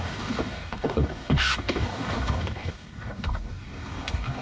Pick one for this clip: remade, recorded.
remade